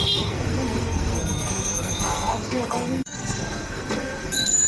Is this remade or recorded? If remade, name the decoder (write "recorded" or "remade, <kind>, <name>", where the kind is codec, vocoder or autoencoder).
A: remade, codec, SNAC